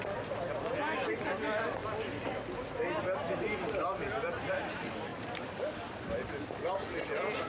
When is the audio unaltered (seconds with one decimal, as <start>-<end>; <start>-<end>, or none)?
0.0-7.5